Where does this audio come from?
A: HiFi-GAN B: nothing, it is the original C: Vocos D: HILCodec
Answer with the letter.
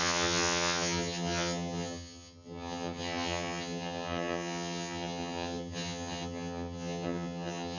A